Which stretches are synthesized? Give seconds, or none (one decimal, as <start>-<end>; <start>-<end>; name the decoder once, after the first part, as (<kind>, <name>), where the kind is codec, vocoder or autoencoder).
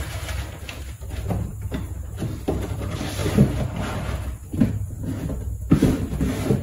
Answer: 0.0-3.2 (vocoder, BigVGAN v2); 4.7-6.6